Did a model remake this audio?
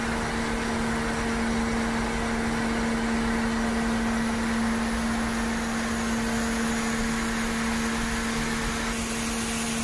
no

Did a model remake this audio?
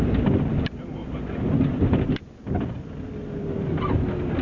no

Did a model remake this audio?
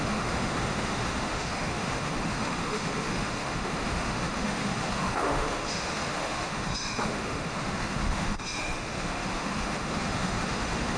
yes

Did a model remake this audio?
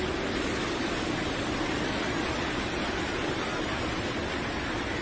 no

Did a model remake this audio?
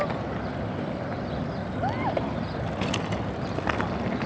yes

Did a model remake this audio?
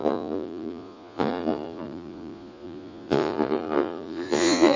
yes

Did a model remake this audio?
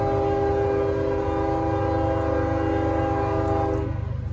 no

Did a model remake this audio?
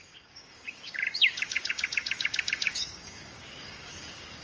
yes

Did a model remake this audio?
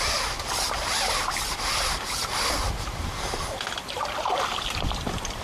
no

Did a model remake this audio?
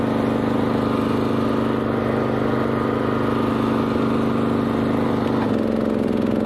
no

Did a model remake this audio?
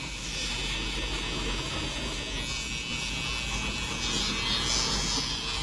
no